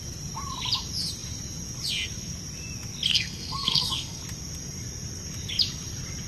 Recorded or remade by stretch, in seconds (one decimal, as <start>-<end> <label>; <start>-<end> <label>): 0.0-3.1 recorded; 3.1-4.2 remade; 4.2-6.3 recorded